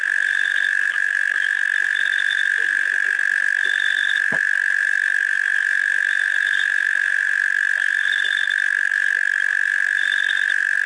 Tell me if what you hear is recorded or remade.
recorded